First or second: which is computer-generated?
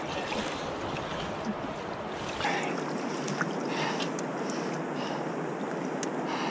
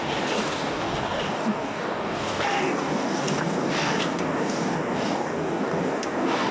second